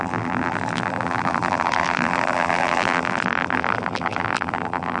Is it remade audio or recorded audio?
remade